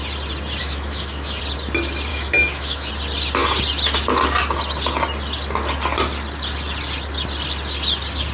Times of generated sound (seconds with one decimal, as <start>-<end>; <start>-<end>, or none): 0.6-1.4; 2.1-2.9